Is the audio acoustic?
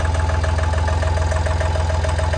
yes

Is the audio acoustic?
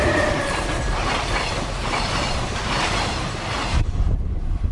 no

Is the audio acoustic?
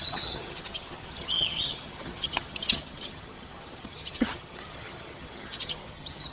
no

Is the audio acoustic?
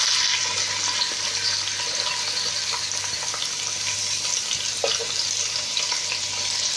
yes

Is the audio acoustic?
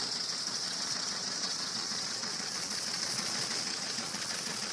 no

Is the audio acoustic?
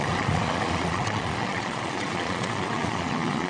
no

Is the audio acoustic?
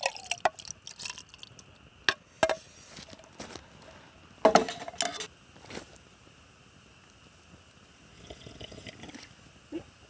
yes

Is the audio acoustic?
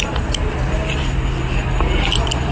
yes